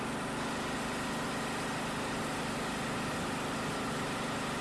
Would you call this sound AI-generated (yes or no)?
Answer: no